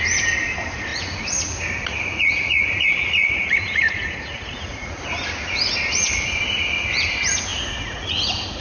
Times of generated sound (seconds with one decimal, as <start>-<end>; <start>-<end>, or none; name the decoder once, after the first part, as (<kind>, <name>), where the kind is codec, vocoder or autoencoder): 0.9-5.0 (vocoder, Vocos); 7.5-8.6